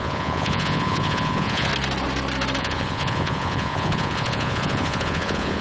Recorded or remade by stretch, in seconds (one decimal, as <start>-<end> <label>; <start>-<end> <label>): 0.0-1.7 remade; 1.7-2.6 recorded; 2.6-5.6 remade

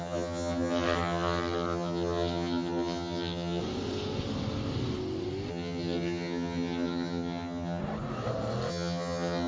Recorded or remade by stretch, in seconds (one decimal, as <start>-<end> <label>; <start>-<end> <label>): 0.0-3.6 remade; 3.6-5.5 recorded; 5.5-7.8 remade; 7.8-8.7 recorded; 8.7-9.5 remade

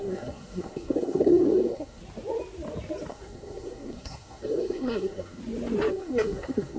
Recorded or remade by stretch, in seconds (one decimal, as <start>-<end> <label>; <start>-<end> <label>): 0.0-2.0 remade; 2.0-3.1 recorded; 3.1-5.4 remade; 5.4-5.9 recorded; 5.9-6.8 remade

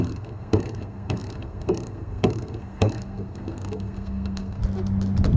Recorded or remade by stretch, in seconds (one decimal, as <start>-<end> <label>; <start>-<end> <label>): 0.0-4.6 remade; 4.6-5.4 recorded

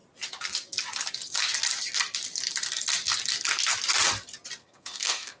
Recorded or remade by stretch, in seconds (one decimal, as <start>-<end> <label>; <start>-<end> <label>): 0.0-4.6 recorded; 4.6-5.4 remade

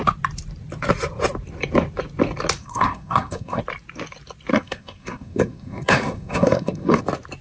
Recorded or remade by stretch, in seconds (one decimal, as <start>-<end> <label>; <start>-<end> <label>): 0.0-2.6 recorded; 2.6-3.6 remade; 3.6-4.5 recorded; 4.5-7.0 remade; 7.0-7.4 recorded

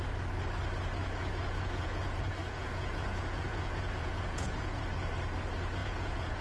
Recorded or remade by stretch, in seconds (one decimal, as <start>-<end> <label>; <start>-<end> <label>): 0.0-1.0 recorded; 1.0-4.8 remade; 4.8-5.8 recorded; 5.8-6.4 remade

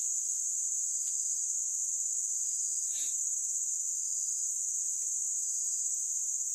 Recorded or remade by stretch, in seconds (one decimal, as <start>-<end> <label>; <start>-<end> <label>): 0.0-6.5 recorded